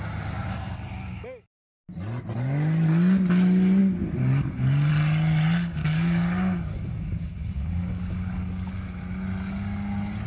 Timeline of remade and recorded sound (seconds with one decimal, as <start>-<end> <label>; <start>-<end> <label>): 0.0-5.8 recorded; 5.8-8.7 remade; 8.7-10.3 recorded

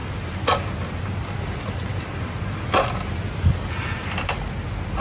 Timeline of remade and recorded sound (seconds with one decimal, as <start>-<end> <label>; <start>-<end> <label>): 0.0-5.0 recorded

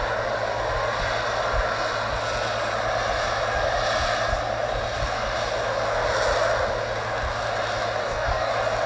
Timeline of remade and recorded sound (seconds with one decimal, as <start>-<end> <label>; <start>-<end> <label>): 0.0-8.0 recorded; 8.0-8.5 remade; 8.5-8.9 recorded

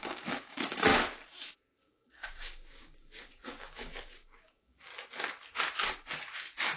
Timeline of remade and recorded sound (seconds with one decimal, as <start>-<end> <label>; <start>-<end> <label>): 0.0-0.9 remade; 0.9-1.8 recorded; 1.8-4.9 remade; 4.9-5.9 recorded; 5.9-6.8 remade

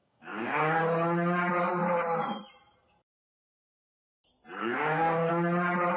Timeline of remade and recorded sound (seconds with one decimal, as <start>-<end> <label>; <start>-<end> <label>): 0.0-0.8 remade; 0.8-4.6 recorded; 4.6-5.3 remade; 5.3-6.0 recorded

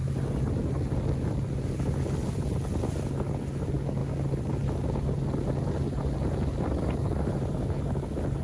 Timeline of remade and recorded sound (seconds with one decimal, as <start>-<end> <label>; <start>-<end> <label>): 0.0-8.4 recorded